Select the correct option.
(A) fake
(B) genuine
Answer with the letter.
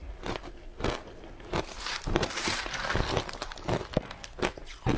B